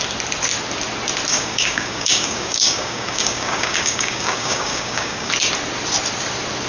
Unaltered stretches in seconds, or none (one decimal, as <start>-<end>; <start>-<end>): 0.0-1.3; 5.3-6.7

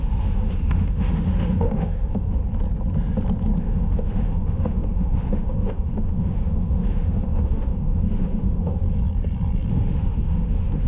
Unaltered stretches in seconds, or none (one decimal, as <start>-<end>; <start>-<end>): 2.4-3.6; 8.8-9.7

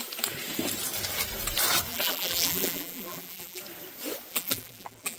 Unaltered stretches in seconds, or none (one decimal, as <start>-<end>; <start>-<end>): 0.0-1.9; 3.6-4.3